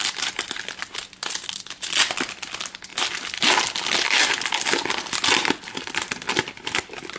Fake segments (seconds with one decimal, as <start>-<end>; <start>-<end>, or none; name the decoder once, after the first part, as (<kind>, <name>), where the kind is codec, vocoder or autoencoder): none